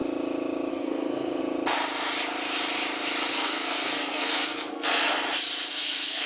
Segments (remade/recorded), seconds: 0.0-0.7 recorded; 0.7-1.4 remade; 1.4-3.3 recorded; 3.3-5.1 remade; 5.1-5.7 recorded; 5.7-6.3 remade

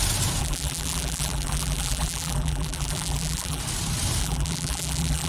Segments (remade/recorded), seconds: 0.0-0.4 recorded; 0.4-3.6 remade; 3.6-4.2 recorded; 4.2-5.3 remade

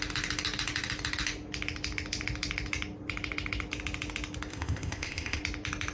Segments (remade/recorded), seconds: 0.0-4.5 recorded; 4.5-5.4 remade; 5.4-5.9 recorded

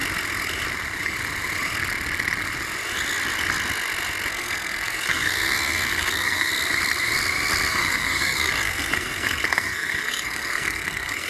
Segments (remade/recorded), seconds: 0.0-4.3 recorded; 4.3-6.5 remade; 6.5-7.7 recorded; 7.7-11.3 remade

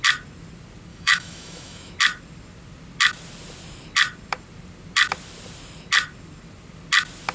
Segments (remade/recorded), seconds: 0.0-0.9 recorded; 0.9-1.9 remade; 1.9-7.3 recorded

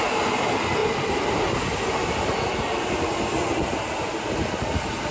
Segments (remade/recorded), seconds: 0.0-5.1 recorded

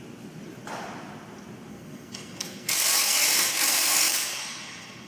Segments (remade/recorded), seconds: 0.0-1.7 recorded; 1.7-5.1 remade

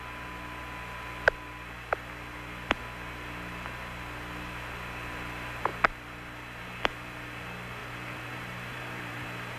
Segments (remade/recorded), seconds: 0.0-7.8 recorded; 7.8-9.2 remade; 9.2-9.6 recorded